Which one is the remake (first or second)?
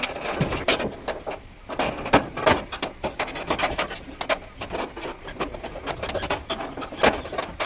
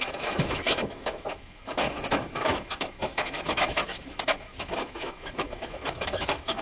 second